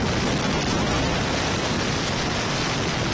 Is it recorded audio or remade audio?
recorded